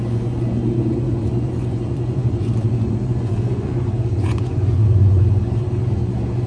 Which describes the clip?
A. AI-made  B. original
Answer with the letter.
A